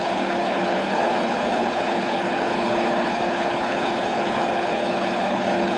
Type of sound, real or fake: fake